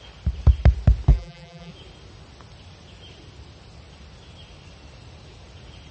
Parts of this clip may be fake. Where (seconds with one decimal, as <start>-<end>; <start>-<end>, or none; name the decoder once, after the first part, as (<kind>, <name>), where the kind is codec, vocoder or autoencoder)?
1.1-1.7 (vocoder, BigVGAN v2)